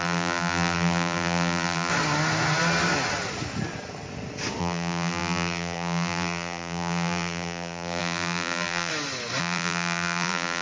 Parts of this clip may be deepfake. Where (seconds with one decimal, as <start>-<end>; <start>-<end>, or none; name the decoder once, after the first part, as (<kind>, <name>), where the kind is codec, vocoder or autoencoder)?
0.0-1.9 (vocoder, BigVGAN v2); 4.6-8.9; 9.4-10.6

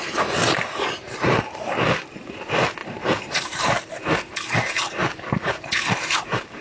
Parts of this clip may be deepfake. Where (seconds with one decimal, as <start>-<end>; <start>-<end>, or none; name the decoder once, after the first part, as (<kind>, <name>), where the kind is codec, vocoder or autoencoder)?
0.4-1.7 (vocoder, BigVGAN v2); 2.8-3.9; 5.0-5.8

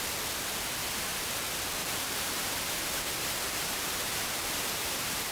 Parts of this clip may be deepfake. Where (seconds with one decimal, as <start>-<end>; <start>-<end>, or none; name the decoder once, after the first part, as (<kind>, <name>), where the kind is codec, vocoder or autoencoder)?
1.8-5.3 (vocoder, BigVGAN v2)

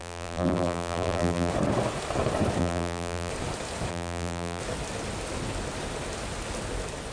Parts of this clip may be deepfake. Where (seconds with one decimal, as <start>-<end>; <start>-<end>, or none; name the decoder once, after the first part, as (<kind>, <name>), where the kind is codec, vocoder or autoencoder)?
0.0-1.5 (vocoder, BigVGAN v2); 2.6-3.3; 3.9-4.6

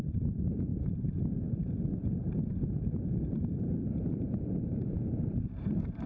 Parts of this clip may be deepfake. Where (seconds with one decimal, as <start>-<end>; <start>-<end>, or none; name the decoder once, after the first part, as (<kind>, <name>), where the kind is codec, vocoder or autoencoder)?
0.0-0.7 (vocoder, BigVGAN v2); 3.6-6.1

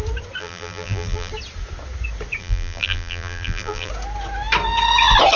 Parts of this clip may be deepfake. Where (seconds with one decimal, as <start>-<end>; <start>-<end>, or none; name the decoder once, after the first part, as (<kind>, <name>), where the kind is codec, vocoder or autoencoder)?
0.4-1.3 (vocoder, BigVGAN v2); 2.4-3.9